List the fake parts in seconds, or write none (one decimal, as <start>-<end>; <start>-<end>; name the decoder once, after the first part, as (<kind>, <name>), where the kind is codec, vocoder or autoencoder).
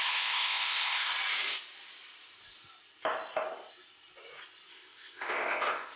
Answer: 0.0-1.1 (codec, ZipCodec); 4.7-6.0